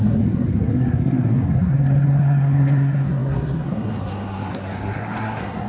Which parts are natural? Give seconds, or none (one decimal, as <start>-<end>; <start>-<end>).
none